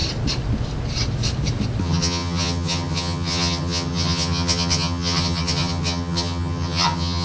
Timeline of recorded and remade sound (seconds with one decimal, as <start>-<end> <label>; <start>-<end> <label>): 0.0-1.8 recorded; 1.8-7.2 remade